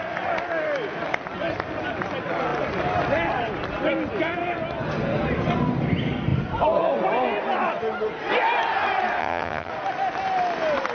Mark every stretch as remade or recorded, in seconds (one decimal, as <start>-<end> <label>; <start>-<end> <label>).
0.0-9.2 recorded; 9.2-9.7 remade; 9.7-10.9 recorded